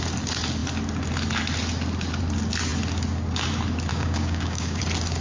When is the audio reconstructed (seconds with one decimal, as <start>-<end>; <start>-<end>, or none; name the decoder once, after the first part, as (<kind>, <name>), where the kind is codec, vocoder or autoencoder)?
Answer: 3.9-4.8 (codec, DAC)